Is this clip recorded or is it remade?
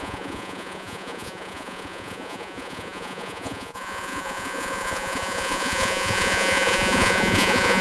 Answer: remade